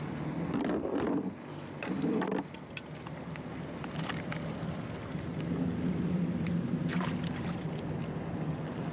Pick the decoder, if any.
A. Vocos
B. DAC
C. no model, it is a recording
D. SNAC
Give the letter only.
C